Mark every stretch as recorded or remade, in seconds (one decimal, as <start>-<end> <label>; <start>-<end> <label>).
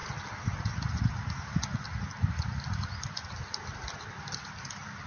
0.0-5.1 recorded